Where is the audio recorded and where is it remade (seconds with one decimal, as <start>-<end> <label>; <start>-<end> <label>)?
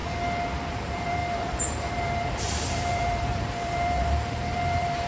0.0-0.7 recorded; 0.7-5.1 remade